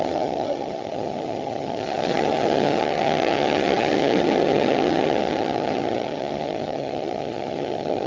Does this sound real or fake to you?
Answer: fake